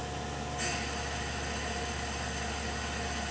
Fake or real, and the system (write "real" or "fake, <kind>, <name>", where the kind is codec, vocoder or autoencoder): real